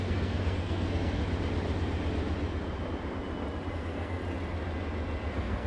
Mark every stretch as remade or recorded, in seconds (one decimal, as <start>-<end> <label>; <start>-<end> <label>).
0.0-1.2 remade; 1.2-3.7 recorded; 3.7-4.2 remade; 4.2-5.3 recorded; 5.3-5.7 remade